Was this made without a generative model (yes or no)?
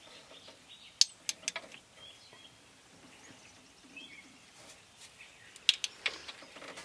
yes